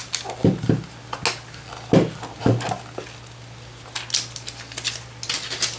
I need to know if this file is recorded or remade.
recorded